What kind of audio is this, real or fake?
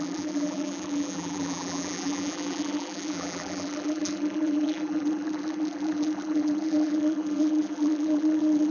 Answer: fake